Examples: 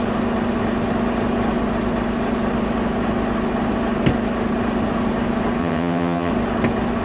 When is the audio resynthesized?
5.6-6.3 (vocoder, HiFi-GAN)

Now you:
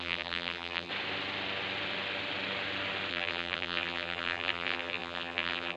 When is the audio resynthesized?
0.0-0.9 (vocoder, BigVGAN v2); 3.1-5.8